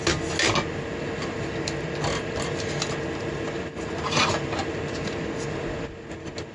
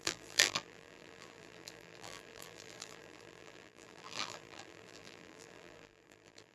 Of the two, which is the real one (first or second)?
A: first